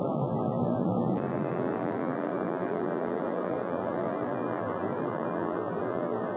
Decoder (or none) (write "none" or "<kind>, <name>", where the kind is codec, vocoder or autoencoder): vocoder, BigVGAN v2